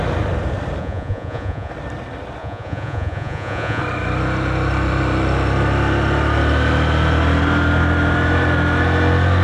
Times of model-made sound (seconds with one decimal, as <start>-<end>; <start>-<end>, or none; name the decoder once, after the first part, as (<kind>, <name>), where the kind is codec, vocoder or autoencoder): 0.8-1.7 (vocoder, Vocos); 2.4-3.8